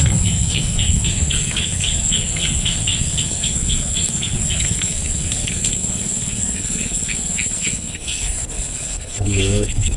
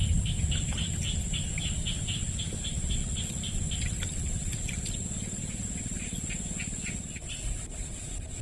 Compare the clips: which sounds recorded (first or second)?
second